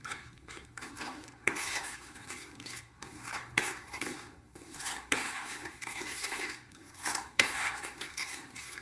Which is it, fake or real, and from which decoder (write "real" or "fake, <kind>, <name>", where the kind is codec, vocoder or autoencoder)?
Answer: fake, codec, SNAC